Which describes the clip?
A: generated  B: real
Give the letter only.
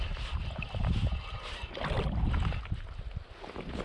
B